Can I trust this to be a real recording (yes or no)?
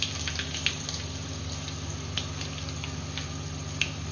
yes